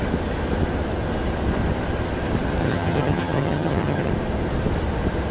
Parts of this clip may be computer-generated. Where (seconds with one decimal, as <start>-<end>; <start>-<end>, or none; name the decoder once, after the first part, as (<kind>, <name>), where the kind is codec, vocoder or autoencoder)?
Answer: 2.6-4.1 (vocoder, HiFi-GAN)